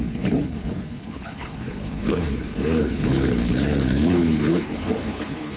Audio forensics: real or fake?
fake